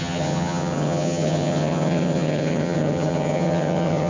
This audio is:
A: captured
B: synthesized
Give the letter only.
B